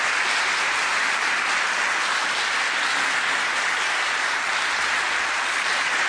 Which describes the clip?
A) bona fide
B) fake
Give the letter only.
A